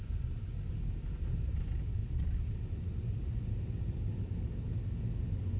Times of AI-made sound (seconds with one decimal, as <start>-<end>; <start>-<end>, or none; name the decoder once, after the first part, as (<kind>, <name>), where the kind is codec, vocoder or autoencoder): none